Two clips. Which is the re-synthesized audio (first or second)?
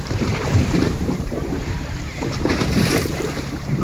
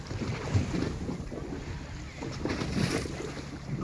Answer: first